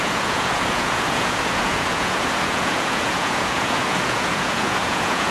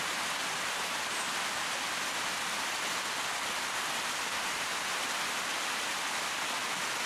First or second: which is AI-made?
first